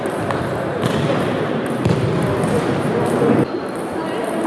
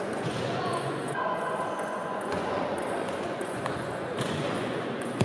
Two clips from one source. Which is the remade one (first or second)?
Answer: second